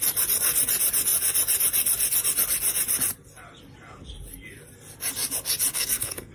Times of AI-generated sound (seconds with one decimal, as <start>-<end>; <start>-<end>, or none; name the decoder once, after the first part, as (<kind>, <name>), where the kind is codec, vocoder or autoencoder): 5.7-6.3 (codec, SNAC)

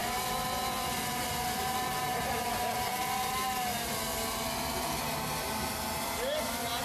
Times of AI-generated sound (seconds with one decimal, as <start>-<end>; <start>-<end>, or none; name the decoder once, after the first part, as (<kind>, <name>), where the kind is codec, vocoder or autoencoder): none